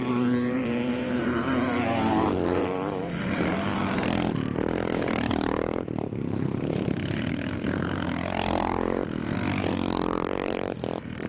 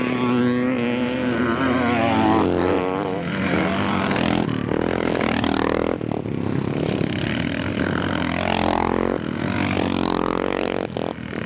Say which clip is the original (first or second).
second